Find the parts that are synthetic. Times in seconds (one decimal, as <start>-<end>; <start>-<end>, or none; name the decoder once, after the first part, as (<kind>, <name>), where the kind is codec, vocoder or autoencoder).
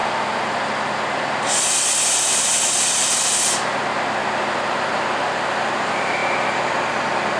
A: none